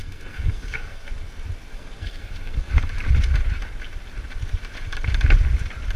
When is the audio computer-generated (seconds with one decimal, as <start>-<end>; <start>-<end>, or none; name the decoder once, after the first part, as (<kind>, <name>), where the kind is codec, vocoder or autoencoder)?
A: 0.0-1.1 (codec, SNAC); 1.7-2.8